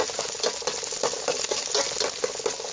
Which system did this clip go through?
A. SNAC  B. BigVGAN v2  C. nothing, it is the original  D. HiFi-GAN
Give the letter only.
C